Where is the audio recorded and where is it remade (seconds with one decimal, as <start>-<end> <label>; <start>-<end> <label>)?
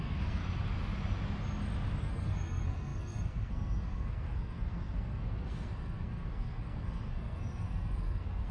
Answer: 0.0-0.4 remade; 0.4-2.0 recorded; 2.0-8.5 remade